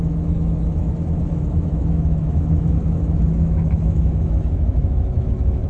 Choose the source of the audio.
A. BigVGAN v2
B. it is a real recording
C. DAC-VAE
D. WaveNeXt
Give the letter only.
C